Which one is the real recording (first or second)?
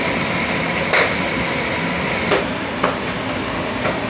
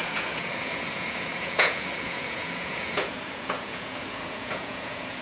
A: first